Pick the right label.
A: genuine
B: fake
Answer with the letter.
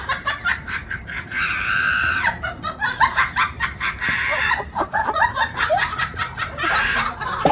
B